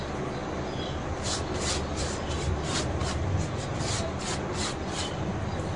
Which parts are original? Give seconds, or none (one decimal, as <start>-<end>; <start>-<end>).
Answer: 0.0-0.4; 2.5-3.0; 5.3-5.8